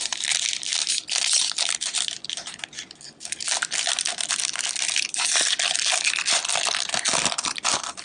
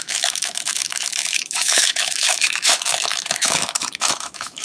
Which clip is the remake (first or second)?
second